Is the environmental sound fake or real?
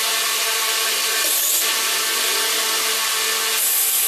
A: real